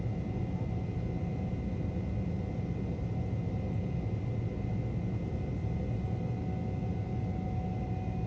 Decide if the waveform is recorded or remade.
recorded